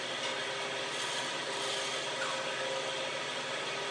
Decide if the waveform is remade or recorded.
recorded